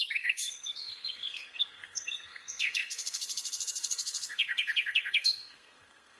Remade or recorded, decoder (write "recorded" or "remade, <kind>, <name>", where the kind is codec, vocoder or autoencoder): remade, codec, SNAC